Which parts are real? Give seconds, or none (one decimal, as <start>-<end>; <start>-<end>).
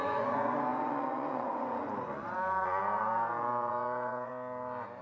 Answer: 4.3-5.0